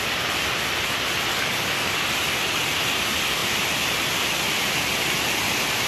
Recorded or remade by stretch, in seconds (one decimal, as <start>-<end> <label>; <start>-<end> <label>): 0.0-1.3 recorded; 1.3-2.0 remade; 2.0-5.9 recorded